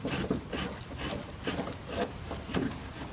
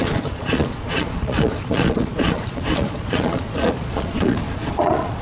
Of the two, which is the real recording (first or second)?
first